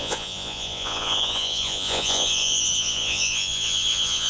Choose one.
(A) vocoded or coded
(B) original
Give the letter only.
A